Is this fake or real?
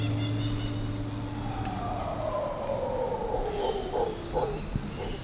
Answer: real